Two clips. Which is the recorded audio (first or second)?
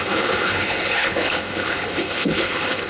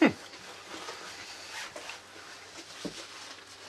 second